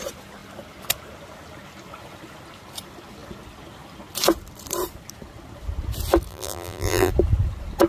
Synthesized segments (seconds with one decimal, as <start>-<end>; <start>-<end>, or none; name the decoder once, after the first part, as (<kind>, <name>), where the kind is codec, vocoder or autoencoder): 6.3-7.1 (vocoder, BigVGAN v2)

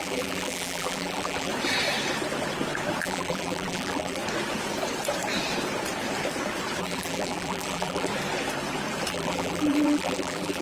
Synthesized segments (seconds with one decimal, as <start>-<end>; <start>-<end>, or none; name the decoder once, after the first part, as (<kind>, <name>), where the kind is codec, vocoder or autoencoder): 0.0-1.5 (vocoder, BigVGAN v2); 3.0-4.2; 6.8-8.1; 9.1-10.6

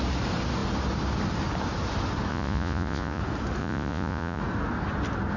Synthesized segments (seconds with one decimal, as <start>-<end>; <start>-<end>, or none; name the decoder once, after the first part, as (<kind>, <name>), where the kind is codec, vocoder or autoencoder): 2.3-3.2 (vocoder, Vocos); 3.6-4.4